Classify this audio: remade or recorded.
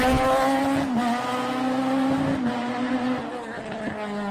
recorded